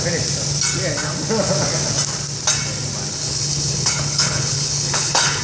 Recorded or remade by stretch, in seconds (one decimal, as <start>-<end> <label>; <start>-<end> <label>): 0.0-3.1 recorded; 3.1-5.4 remade